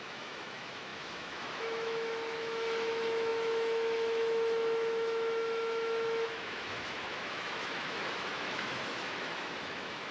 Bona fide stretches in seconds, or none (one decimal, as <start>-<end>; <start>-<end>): none